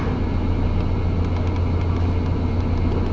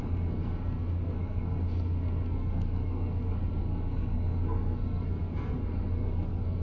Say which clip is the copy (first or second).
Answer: second